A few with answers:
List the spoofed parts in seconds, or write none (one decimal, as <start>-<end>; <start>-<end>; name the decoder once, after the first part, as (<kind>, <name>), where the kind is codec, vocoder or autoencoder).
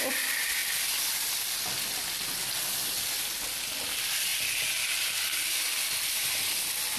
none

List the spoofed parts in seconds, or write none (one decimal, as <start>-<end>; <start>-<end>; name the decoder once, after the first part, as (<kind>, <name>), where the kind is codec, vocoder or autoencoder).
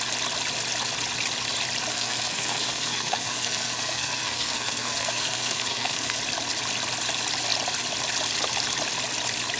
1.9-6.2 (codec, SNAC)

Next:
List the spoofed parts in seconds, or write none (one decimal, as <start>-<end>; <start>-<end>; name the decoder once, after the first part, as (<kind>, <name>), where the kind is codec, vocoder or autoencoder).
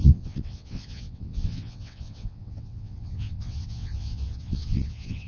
0.0-5.3 (vocoder, WaveNeXt)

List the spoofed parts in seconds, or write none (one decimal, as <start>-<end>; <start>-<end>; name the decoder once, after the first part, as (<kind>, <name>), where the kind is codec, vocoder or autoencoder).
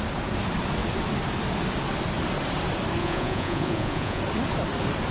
3.0-4.2 (vocoder, Vocos)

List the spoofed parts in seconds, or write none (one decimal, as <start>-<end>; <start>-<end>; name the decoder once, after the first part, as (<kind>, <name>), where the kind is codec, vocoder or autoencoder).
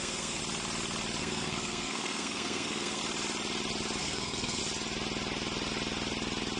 0.0-0.4 (codec, SNAC); 1.2-3.0; 4.0-4.6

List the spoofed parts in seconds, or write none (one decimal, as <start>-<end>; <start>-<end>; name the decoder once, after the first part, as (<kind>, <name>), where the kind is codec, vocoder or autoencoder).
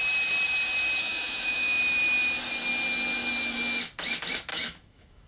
1.0-1.8 (autoencoder, DAC-VAE); 4.5-5.3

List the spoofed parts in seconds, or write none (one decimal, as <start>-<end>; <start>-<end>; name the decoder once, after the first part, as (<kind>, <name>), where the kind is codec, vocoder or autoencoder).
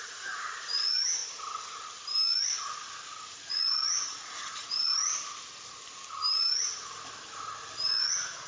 0.0-1.2 (vocoder, Vocos); 3.4-4.9; 8.1-8.5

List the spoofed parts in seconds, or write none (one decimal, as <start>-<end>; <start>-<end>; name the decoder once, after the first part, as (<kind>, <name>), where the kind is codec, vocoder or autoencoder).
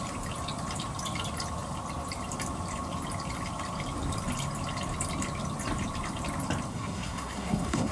6.7-7.9 (codec, SNAC)